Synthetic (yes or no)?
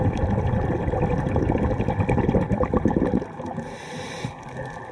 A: no